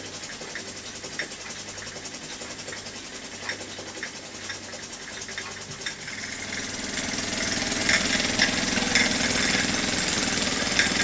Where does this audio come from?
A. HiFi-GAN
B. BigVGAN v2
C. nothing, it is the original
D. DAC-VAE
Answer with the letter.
C